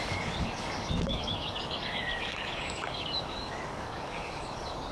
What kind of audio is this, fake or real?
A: fake